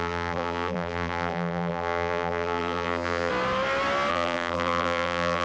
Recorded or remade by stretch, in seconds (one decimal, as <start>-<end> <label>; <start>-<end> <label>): 0.0-3.3 remade; 3.3-4.1 recorded; 4.1-5.4 remade